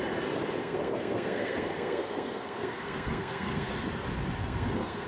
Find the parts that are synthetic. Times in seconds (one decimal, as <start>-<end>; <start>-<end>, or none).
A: 0.6-3.7; 4.4-5.1

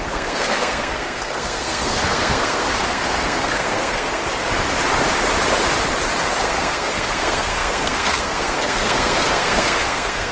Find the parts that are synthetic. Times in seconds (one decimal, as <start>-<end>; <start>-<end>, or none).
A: 0.0-4.2; 6.3-10.3

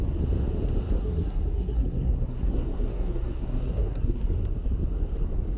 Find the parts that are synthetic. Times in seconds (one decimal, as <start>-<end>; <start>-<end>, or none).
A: 1.0-4.4

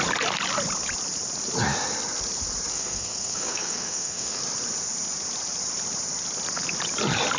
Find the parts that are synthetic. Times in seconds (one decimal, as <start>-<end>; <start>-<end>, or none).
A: 2.7-4.4

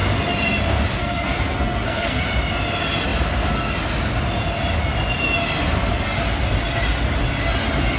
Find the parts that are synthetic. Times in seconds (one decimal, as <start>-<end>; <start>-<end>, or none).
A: 1.0-2.2